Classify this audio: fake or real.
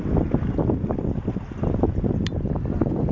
real